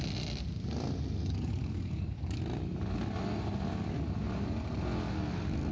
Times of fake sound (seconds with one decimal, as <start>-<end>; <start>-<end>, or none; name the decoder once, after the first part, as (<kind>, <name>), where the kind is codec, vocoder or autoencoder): 1.2-2.4 (codec, DAC)